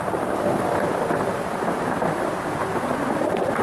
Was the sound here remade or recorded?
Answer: recorded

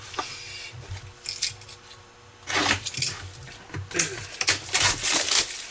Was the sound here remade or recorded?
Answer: recorded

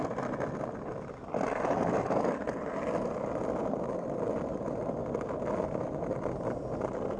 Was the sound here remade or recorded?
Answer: recorded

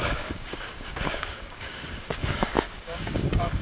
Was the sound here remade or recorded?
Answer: remade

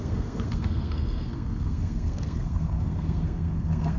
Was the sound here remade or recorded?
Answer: remade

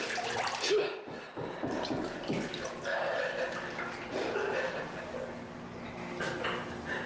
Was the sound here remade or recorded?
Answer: recorded